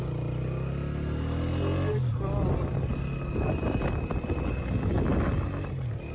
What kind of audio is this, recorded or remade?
recorded